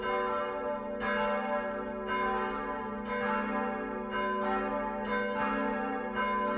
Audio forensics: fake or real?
real